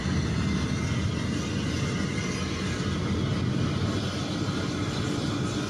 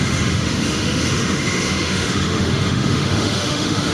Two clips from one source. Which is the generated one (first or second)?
second